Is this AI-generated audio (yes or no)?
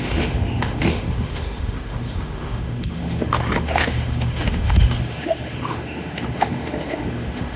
yes